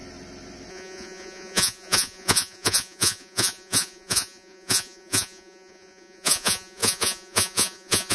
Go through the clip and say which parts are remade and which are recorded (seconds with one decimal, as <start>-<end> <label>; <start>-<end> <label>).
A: 0.0-0.7 recorded; 0.7-8.1 remade